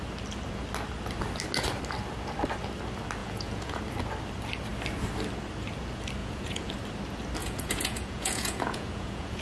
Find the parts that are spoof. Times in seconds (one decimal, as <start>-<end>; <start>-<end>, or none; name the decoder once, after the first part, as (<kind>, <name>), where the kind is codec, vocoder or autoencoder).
3.2-3.8 (vocoder, Vocos); 6.2-6.7; 7.4-9.4

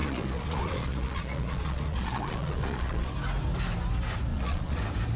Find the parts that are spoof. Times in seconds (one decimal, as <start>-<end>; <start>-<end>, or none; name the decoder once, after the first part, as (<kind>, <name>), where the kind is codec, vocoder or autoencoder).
0.0-3.1 (vocoder, Vocos); 4.3-4.8